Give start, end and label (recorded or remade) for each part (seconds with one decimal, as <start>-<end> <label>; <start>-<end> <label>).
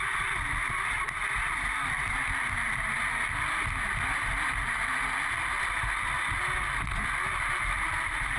0.0-8.4 recorded